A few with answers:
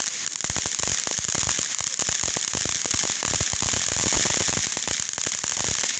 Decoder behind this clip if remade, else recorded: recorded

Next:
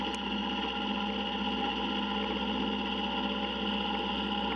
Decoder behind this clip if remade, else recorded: recorded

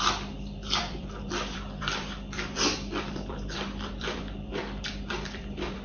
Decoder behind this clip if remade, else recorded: remade, vocoder, BigVGAN v2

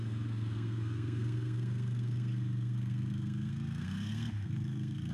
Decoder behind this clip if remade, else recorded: remade, codec, SNAC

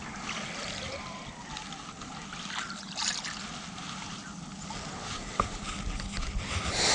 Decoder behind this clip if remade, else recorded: recorded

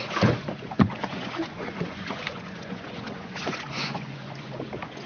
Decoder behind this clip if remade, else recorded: remade, vocoder, Vocos